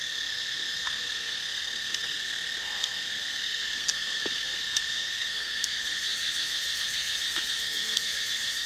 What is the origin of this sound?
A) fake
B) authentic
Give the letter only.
A